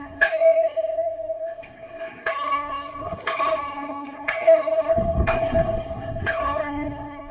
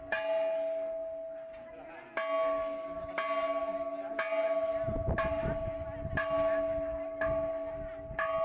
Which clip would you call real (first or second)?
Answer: second